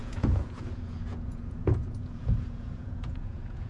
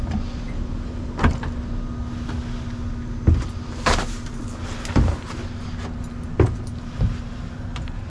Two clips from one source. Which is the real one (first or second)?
second